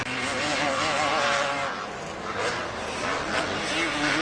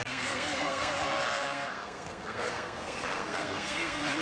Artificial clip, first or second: second